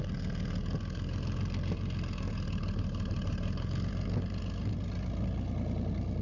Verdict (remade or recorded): recorded